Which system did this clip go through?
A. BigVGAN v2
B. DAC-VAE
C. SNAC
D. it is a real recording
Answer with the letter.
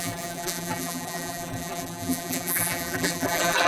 A